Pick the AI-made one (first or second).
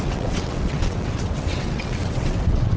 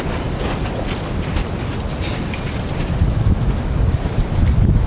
first